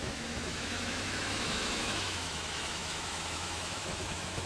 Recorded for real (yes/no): no